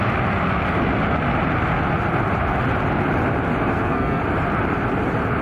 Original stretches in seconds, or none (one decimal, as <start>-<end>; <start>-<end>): 0.0-3.7; 4.2-5.4